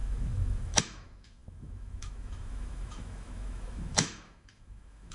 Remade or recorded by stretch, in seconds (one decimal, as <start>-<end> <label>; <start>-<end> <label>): 0.0-5.1 remade

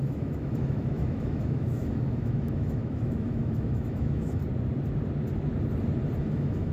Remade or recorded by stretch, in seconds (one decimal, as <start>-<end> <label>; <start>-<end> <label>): 0.0-4.4 remade; 4.4-6.2 recorded; 6.2-6.7 remade

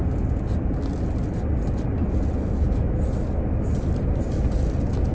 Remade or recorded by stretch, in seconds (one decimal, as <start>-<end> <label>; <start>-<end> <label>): 0.0-5.1 recorded

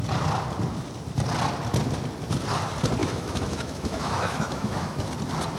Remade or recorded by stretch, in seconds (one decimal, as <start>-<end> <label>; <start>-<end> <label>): 0.0-3.0 recorded; 3.0-5.1 remade; 5.1-5.6 recorded

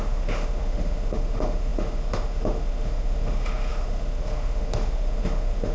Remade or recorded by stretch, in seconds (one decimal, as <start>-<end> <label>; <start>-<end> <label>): 0.0-5.7 remade

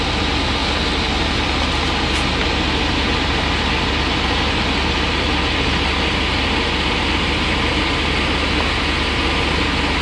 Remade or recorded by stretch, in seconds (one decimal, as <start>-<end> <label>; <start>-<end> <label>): 0.0-10.0 recorded

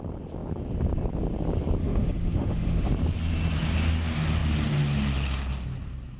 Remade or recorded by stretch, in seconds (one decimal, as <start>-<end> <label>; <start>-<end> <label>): 0.0-1.8 recorded; 1.8-2.9 remade; 2.9-6.2 recorded

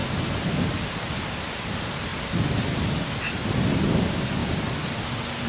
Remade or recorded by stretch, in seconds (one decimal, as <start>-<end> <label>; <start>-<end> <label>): 0.0-5.5 recorded